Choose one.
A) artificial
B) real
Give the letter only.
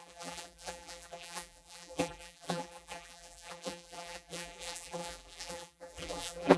A